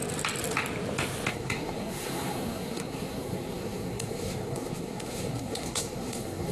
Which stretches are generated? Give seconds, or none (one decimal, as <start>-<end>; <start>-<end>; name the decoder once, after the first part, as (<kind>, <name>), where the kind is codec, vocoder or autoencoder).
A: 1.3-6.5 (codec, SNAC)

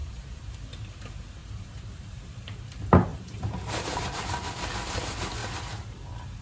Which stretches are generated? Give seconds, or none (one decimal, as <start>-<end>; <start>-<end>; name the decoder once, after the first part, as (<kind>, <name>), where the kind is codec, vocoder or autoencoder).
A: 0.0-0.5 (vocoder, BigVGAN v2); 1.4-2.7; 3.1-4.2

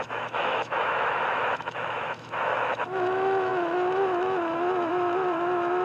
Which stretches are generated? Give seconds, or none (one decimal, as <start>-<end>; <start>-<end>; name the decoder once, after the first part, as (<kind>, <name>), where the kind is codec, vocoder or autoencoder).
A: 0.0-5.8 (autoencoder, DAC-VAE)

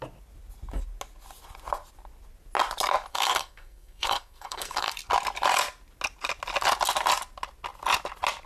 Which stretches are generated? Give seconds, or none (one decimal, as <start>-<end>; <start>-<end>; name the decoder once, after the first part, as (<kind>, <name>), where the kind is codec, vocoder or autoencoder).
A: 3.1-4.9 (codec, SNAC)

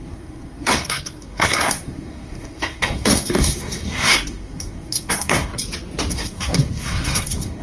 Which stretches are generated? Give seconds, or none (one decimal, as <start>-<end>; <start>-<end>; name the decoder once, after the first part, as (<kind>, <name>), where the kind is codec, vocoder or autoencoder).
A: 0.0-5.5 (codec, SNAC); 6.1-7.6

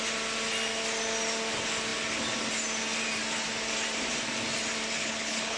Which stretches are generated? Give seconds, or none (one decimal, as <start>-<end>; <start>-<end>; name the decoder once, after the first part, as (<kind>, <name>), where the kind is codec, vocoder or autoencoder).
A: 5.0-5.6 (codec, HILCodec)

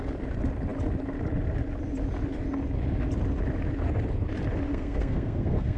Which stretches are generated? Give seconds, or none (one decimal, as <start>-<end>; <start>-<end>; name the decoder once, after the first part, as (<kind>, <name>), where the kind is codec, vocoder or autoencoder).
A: 4.7-5.8 (codec, SNAC)

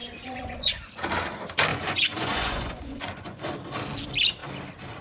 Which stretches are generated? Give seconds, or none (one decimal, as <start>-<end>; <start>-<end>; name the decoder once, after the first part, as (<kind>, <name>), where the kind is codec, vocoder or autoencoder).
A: 0.0-0.7 (vocoder, Vocos); 1.7-3.5